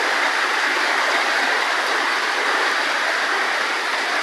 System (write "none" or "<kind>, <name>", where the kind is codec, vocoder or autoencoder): none